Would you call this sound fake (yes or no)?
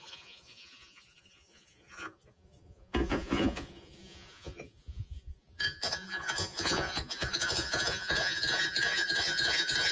yes